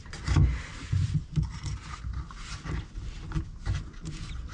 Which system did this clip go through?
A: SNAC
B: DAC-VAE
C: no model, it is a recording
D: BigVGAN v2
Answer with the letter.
C